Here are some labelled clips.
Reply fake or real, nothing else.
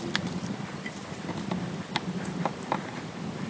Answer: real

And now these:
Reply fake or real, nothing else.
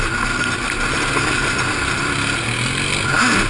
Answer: real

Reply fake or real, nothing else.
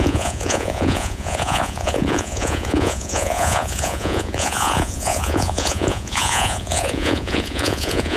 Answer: fake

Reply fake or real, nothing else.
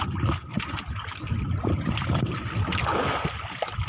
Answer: real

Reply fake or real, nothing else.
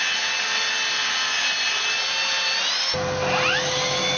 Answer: real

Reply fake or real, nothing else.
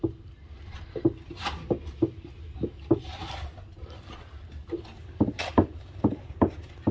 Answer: real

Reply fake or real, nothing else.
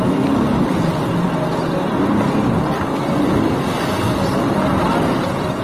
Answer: real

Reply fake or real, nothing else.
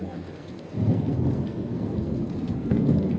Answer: fake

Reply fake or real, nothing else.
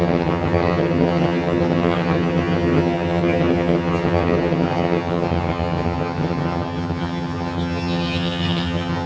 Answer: fake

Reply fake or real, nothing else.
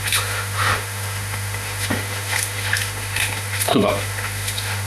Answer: fake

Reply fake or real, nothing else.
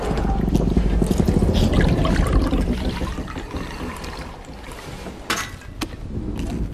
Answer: real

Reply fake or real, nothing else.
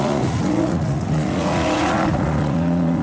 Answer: fake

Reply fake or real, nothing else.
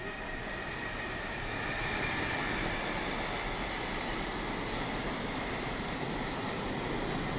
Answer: real